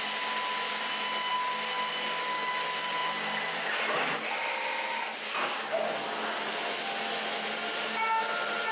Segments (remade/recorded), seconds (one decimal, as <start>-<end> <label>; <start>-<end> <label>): 0.0-8.7 recorded